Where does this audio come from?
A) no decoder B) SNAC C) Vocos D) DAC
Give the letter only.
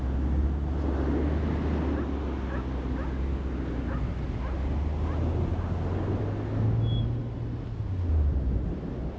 A